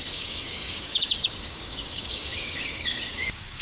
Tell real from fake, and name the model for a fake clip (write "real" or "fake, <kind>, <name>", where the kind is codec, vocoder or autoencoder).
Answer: fake, codec, DAC